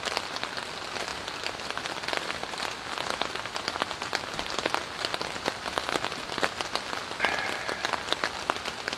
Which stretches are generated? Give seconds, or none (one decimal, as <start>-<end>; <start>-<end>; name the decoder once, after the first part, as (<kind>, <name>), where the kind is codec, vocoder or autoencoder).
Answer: none